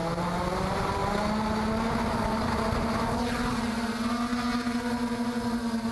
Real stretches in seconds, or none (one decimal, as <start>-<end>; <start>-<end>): 0.0-5.9